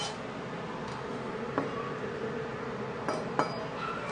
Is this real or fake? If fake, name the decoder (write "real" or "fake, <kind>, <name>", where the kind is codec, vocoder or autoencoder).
real